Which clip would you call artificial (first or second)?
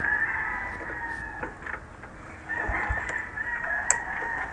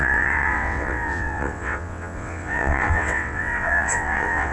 second